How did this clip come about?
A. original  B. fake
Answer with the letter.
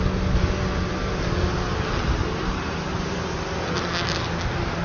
A